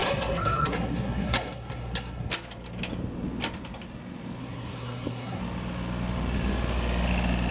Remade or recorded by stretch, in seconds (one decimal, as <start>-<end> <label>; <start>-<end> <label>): 0.0-2.3 remade; 2.3-4.4 recorded; 4.4-5.4 remade; 5.4-7.5 recorded